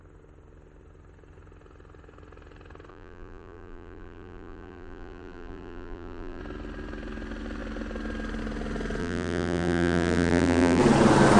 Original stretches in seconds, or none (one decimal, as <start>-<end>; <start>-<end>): 0.0-2.9; 6.4-9.0; 10.8-11.4